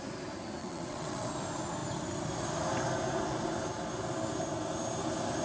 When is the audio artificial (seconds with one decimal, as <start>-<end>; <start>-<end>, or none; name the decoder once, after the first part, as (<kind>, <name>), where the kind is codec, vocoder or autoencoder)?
0.6-1.3 (vocoder, WaveNeXt)